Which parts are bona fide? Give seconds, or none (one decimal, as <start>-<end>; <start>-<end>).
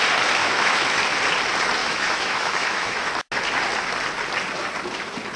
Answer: 0.0-0.4; 1.0-1.8; 3.1-5.4